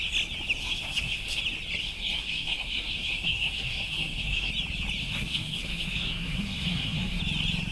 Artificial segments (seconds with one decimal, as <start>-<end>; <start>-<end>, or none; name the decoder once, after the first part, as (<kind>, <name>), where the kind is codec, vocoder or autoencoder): 0.6-1.4 (codec, SNAC); 1.8-4.5; 5.0-7.2